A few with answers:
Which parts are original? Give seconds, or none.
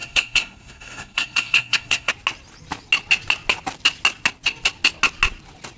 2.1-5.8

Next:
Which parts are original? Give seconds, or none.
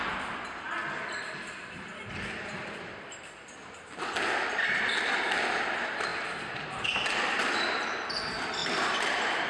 0.0-8.6